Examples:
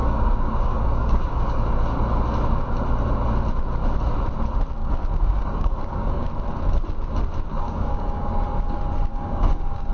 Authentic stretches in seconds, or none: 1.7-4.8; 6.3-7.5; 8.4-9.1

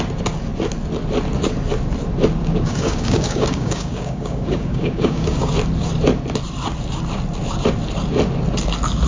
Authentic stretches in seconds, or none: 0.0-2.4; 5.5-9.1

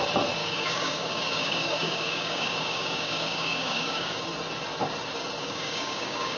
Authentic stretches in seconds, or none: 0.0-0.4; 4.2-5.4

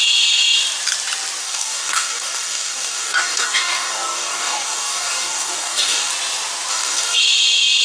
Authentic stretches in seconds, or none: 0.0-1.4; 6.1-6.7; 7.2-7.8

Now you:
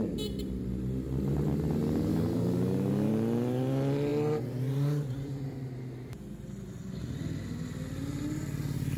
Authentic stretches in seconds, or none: 0.0-2.1; 3.1-9.0

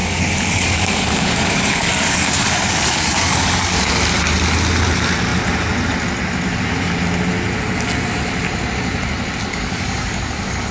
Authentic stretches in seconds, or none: 3.9-9.5

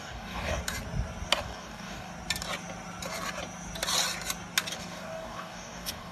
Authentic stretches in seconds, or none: 0.6-1.4; 2.1-4.7

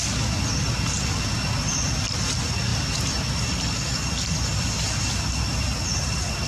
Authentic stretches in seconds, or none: 0.0-6.5